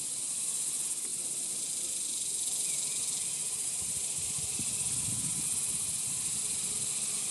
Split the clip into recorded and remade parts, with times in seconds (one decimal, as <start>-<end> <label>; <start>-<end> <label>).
0.0-7.3 recorded